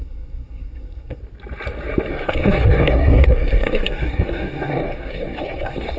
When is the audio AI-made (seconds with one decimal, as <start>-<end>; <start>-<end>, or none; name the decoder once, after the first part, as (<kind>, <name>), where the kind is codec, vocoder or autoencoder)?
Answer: 0.0-1.2 (codec, SNAC); 2.1-6.0